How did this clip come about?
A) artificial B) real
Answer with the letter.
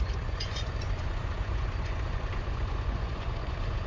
A